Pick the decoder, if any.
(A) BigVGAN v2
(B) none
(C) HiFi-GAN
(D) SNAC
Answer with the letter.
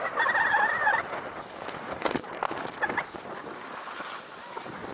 B